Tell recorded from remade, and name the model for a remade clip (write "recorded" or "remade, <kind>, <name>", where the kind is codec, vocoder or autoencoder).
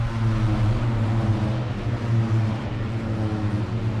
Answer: recorded